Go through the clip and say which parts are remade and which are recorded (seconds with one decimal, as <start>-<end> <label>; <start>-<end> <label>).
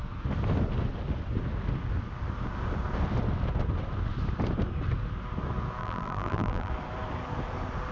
0.0-5.8 recorded; 5.8-6.7 remade; 6.7-7.9 recorded